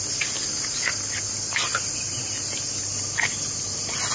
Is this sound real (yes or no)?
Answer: yes